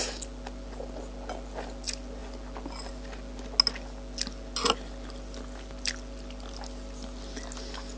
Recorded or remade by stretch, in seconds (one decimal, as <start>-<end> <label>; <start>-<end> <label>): 0.0-8.0 recorded